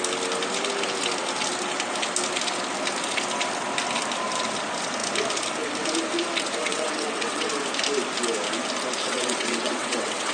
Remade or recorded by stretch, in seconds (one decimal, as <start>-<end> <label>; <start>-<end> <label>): 0.0-6.6 recorded; 6.6-7.5 remade; 7.5-9.0 recorded; 9.0-10.3 remade